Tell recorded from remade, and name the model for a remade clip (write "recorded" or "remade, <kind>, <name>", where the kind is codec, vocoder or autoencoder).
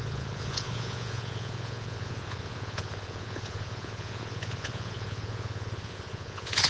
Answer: remade, vocoder, Vocos